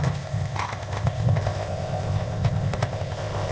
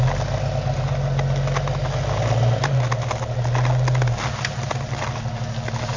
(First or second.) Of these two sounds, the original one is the second